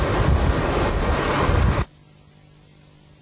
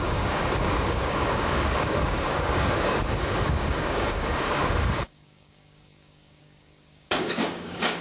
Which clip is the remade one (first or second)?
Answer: second